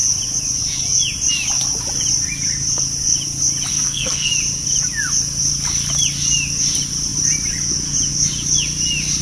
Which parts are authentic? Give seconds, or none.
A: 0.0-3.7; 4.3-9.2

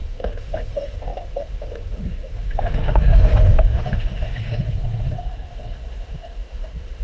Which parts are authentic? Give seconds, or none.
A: none

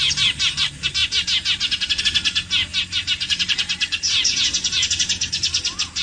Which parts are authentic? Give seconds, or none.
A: 1.0-2.0

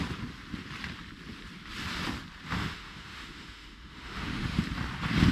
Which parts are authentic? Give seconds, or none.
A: 0.0-2.6; 4.6-5.3

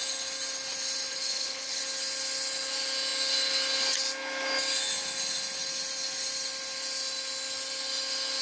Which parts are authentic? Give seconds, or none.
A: 0.0-1.1; 1.8-8.4

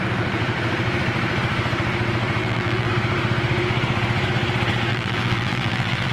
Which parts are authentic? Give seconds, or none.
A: 0.0-2.4; 2.9-4.9